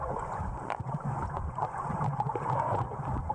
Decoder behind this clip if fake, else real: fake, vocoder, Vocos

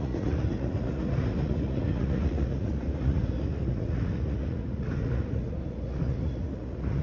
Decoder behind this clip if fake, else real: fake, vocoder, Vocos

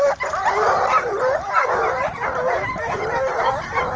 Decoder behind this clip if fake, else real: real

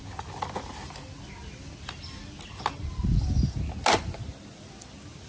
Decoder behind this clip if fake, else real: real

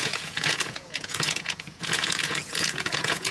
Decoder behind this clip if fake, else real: fake, vocoder, Vocos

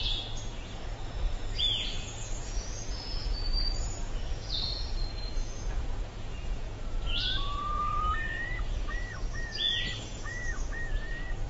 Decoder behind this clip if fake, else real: fake, vocoder, Vocos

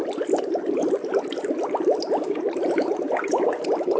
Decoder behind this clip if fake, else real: real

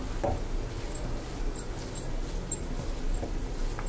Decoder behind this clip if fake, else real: real